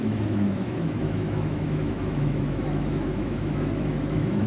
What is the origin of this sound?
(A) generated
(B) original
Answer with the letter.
A